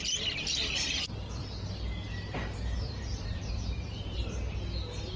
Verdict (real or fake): real